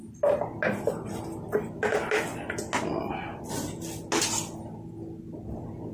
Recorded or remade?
recorded